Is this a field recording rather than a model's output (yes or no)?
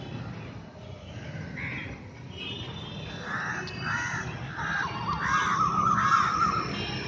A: yes